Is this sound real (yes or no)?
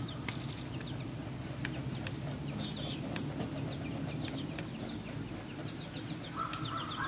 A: yes